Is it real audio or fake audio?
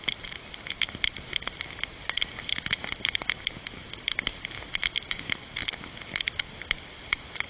real